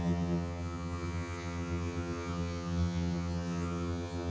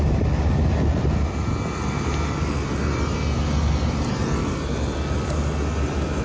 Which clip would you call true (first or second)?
second